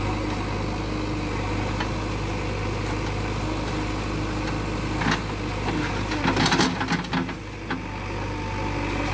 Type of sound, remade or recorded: recorded